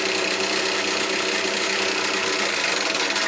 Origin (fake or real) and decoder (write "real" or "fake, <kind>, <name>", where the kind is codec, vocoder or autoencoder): real